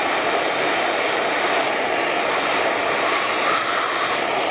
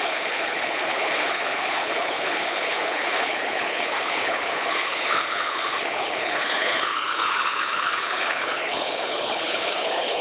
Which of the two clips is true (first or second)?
first